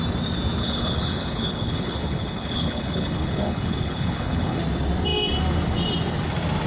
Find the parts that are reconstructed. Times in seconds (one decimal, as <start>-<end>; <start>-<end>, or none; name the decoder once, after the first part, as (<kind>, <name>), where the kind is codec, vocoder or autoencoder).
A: 0.6-4.6 (codec, HILCodec)